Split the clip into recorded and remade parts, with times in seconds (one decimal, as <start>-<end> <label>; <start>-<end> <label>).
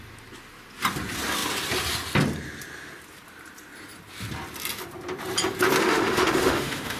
0.0-5.8 recorded; 5.8-7.0 remade